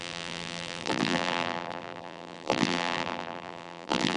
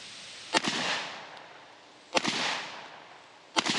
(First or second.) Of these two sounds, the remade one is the first